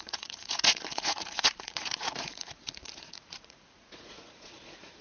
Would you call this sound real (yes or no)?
no